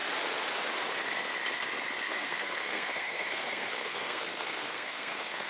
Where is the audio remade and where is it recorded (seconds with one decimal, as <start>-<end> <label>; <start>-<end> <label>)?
0.0-2.1 recorded; 2.1-5.5 remade